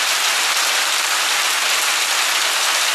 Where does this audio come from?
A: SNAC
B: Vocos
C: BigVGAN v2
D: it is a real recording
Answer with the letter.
D